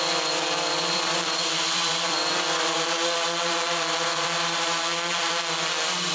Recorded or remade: remade